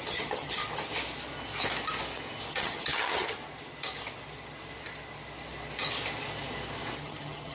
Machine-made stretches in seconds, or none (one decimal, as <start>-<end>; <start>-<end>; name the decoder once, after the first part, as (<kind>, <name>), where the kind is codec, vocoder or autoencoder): 0.0-0.6 (vocoder, HiFi-GAN); 2.5-3.4; 7.0-7.5